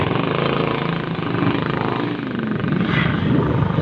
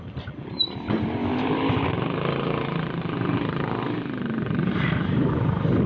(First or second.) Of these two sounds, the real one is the first